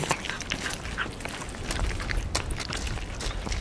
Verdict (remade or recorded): recorded